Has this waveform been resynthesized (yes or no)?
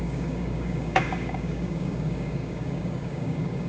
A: yes